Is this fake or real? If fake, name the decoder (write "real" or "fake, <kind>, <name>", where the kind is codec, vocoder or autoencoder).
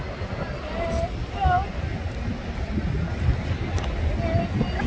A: real